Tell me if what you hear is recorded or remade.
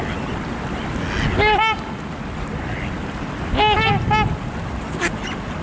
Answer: recorded